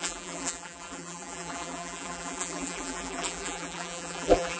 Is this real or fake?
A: fake